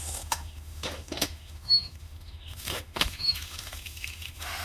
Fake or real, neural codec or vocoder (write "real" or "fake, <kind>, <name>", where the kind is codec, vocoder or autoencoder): fake, autoencoder, DAC-VAE